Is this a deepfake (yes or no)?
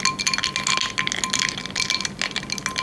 no